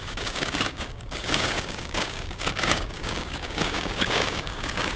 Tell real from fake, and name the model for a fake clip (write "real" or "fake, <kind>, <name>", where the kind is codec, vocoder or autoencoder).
fake, codec, DAC